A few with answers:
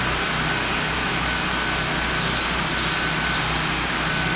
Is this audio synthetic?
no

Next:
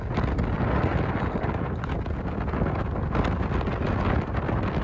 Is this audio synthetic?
no